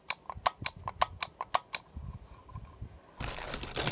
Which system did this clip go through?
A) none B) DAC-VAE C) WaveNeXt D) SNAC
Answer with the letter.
A